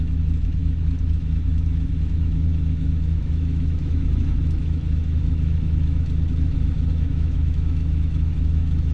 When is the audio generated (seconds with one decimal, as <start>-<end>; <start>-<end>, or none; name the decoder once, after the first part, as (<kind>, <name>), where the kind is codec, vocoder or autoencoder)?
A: 0.0-8.9 (autoencoder, DAC-VAE)